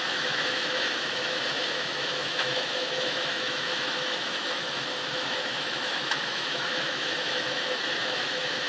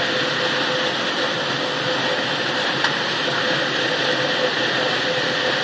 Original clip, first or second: second